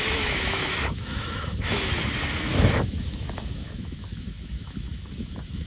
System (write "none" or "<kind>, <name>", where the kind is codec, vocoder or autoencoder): autoencoder, DAC-VAE